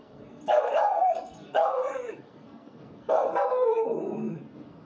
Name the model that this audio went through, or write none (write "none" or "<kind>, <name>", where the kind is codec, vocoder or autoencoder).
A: codec, SNAC